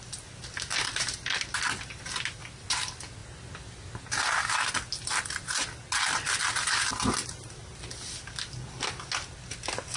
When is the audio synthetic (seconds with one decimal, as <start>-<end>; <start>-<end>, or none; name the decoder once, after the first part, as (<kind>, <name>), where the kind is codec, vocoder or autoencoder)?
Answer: none